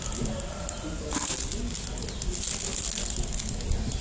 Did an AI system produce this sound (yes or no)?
no